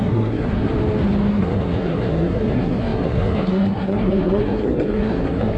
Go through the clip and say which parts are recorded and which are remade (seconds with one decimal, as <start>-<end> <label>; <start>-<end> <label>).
0.0-0.7 remade; 0.7-1.3 recorded; 1.3-5.6 remade